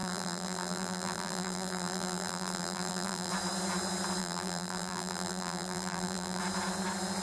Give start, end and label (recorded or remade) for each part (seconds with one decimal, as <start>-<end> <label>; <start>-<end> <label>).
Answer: 0.0-3.3 remade; 3.3-4.2 recorded; 4.2-6.4 remade; 6.4-7.2 recorded